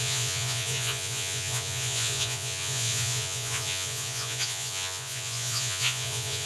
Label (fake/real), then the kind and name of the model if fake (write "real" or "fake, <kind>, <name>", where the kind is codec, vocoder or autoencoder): fake, vocoder, Vocos